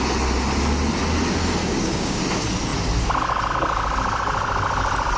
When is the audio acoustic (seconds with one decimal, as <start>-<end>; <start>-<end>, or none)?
0.0-1.6; 2.2-5.2